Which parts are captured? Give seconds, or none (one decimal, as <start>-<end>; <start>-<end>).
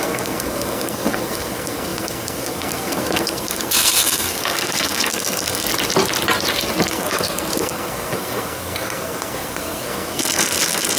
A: 5.7-6.9